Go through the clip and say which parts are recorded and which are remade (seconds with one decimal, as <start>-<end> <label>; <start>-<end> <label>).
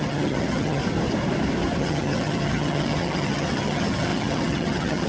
0.0-0.8 remade; 0.8-1.8 recorded; 1.8-5.1 remade